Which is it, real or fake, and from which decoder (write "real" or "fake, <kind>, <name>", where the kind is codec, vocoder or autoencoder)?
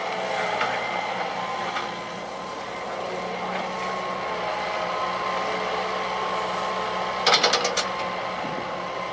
real